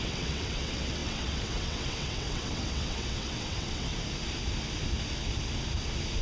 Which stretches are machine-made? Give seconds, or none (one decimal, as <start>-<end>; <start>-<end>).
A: 0.0-3.9